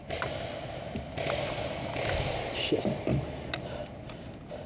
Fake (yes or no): no